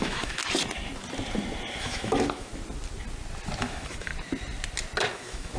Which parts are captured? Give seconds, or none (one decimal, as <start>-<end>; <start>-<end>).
0.4-1.8; 2.5-3.6; 4.1-5.1